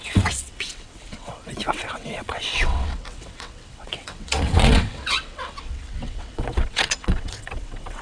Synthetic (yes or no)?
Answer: yes